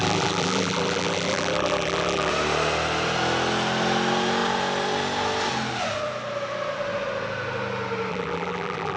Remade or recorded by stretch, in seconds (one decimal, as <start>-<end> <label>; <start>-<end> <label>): 0.0-2.3 remade; 2.3-8.1 recorded; 8.1-9.0 remade